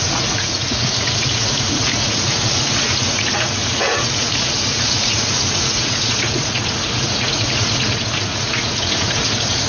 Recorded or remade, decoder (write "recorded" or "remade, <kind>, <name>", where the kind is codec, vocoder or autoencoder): remade, vocoder, Vocos